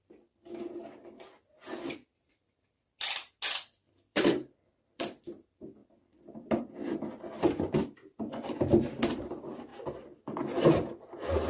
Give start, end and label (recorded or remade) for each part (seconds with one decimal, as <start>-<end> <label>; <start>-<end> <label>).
0.0-0.8 remade; 0.8-3.9 recorded; 3.9-5.8 remade; 5.8-9.2 recorded; 9.2-9.7 remade; 9.7-11.5 recorded